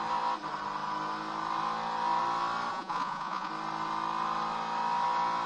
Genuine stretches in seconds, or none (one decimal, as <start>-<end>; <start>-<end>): 0.0-2.7; 3.5-5.5